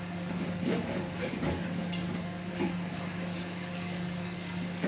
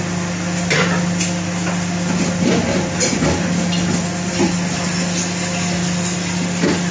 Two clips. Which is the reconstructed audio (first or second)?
first